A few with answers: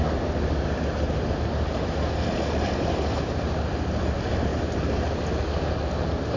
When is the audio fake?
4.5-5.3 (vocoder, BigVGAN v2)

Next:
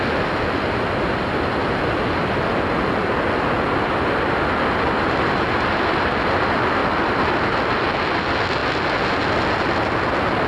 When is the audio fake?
none